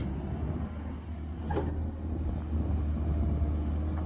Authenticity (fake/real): real